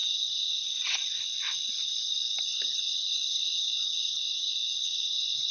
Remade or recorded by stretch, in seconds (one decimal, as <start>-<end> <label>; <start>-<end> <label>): 0.0-5.5 recorded